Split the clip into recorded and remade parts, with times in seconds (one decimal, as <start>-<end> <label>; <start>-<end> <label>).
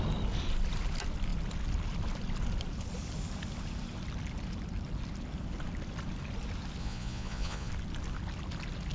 0.0-6.8 recorded; 6.8-7.7 remade; 7.7-8.9 recorded